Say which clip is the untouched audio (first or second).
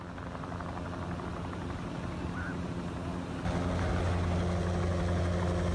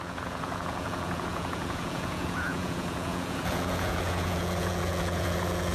first